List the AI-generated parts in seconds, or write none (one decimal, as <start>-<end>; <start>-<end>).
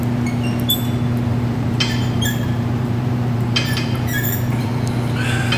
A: 1.3-4.7